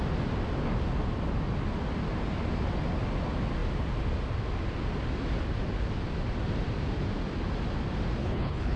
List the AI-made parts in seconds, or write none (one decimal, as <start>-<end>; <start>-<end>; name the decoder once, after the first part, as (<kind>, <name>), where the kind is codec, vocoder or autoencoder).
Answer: 8.2-8.8 (codec, HILCodec)